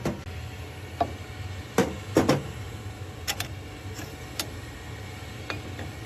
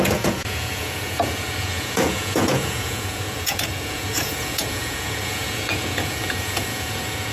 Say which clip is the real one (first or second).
first